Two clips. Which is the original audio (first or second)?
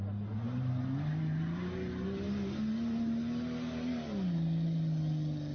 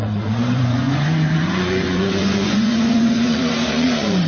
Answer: first